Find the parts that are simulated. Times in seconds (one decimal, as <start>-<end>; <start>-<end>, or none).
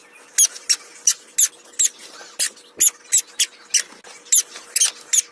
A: none